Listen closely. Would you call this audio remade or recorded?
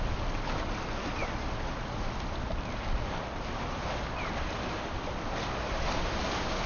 recorded